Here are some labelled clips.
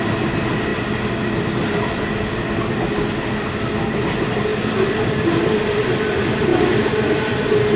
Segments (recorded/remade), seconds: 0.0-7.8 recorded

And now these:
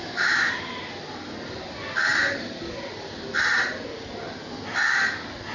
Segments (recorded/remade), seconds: 0.0-0.5 remade; 0.5-5.5 recorded